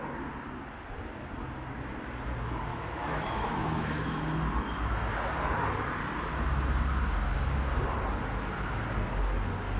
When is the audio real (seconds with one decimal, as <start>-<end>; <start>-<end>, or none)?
0.0-2.7; 4.2-9.8